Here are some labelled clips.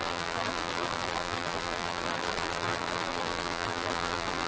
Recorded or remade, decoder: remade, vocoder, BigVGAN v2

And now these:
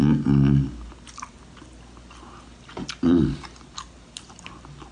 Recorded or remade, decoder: recorded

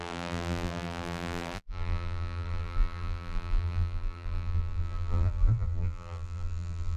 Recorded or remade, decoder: remade, vocoder, BigVGAN v2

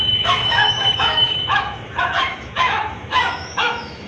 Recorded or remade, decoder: remade, autoencoder, DAC-VAE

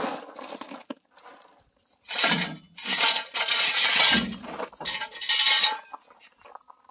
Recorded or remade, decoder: recorded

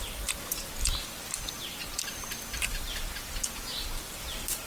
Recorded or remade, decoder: recorded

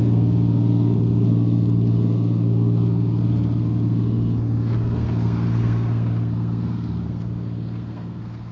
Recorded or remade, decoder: remade, codec, SNAC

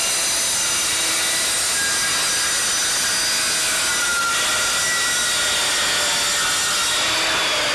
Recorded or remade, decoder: recorded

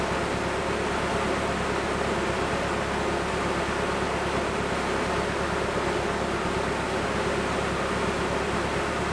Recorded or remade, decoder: recorded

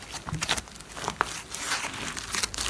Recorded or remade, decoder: remade, vocoder, BigVGAN v2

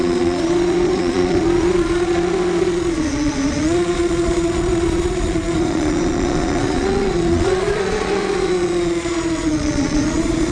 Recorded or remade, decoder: remade, vocoder, Vocos